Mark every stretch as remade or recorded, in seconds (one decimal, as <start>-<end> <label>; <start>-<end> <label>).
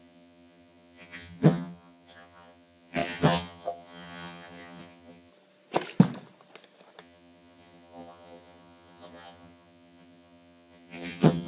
0.0-5.3 remade; 5.3-7.0 recorded; 7.0-11.5 remade